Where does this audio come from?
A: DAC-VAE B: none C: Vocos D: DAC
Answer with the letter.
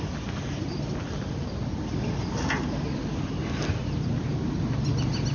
B